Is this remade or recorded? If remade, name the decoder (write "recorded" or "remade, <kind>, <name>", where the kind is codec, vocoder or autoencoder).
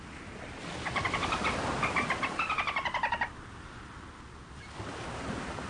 recorded